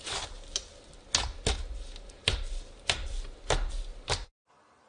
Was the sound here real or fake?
real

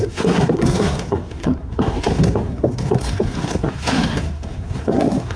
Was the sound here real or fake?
fake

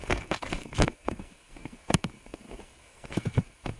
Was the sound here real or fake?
fake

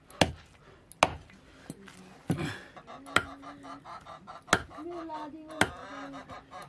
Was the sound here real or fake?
real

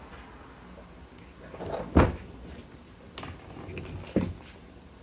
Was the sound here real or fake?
real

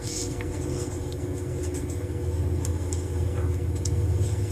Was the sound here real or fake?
fake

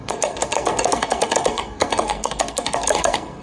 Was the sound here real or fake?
fake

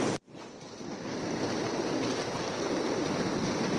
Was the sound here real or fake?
real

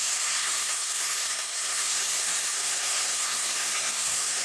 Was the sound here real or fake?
fake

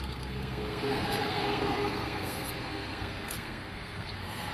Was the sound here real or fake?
fake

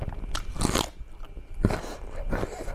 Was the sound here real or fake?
real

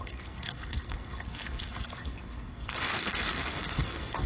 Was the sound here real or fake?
fake